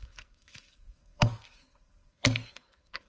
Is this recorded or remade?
remade